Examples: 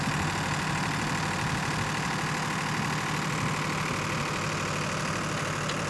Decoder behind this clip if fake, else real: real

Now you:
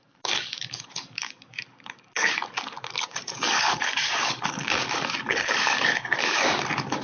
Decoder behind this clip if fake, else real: fake, codec, DAC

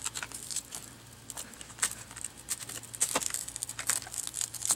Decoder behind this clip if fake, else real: real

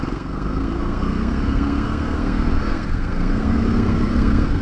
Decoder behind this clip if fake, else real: fake, codec, SNAC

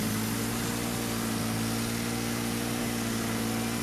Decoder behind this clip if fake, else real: real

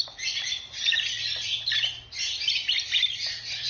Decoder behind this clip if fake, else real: fake, vocoder, BigVGAN v2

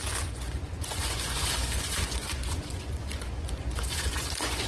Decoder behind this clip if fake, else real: fake, vocoder, Vocos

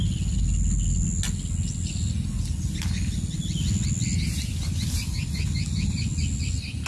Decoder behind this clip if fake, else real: real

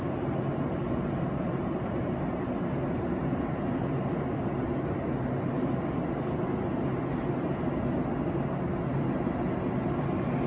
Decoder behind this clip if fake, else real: real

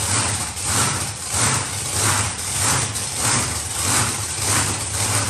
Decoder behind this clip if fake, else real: fake, vocoder, BigVGAN v2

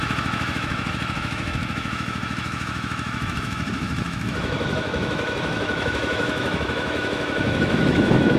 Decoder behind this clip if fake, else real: fake, autoencoder, DAC-VAE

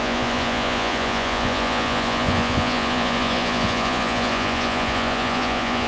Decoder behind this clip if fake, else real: fake, vocoder, Vocos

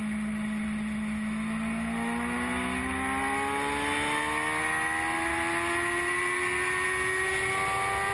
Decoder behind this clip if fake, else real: real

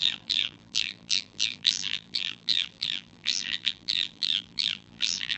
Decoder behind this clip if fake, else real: fake, vocoder, BigVGAN v2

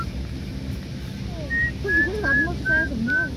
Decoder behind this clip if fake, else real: real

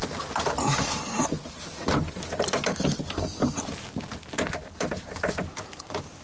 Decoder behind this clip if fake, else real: real